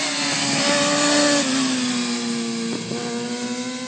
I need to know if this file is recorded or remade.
recorded